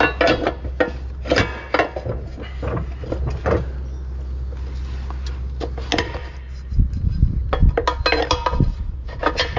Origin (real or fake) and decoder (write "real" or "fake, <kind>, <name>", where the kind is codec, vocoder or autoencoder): real